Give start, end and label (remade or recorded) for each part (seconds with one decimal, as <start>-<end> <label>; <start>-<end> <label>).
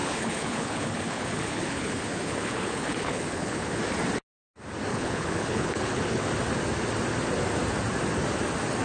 0.0-3.8 remade; 3.8-4.9 recorded; 4.9-6.2 remade; 6.2-8.8 recorded